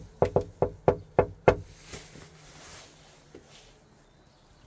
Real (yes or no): yes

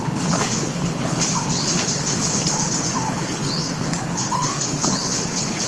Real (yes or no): no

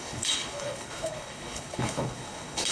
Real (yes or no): no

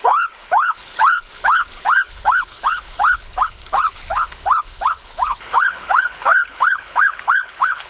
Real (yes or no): no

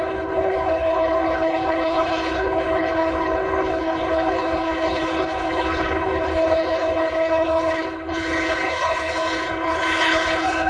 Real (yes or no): no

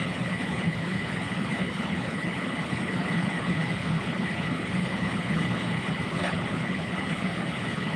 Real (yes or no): no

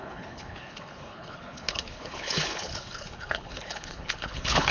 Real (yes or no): no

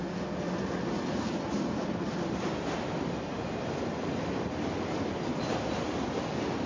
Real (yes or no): yes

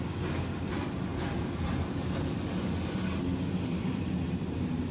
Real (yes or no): yes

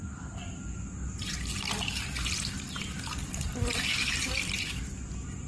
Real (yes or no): yes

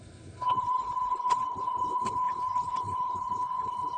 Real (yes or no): no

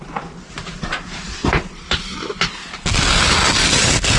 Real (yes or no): yes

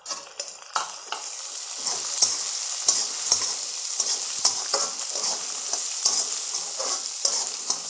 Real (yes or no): yes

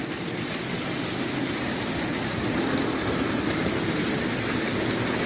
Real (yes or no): yes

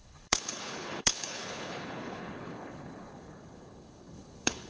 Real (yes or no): no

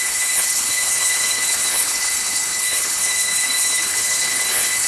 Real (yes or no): no